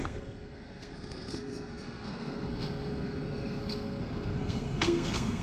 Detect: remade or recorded remade